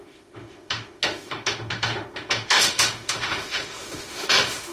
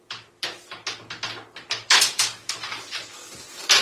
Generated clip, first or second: first